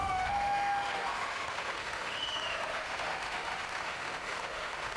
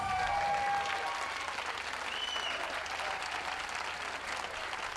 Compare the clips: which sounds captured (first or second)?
second